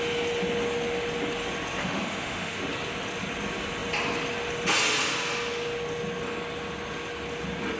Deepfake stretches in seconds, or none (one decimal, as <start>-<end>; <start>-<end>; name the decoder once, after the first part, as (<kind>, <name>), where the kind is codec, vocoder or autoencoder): 1.8-2.6 (autoencoder, DAC-VAE)